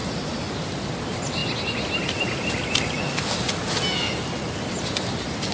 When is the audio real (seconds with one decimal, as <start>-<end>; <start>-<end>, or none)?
1.4-4.7